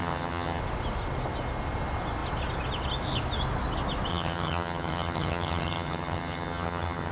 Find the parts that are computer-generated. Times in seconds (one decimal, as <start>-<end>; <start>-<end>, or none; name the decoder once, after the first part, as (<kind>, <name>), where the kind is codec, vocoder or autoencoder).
0.0-0.6 (vocoder, HiFi-GAN); 4.1-7.1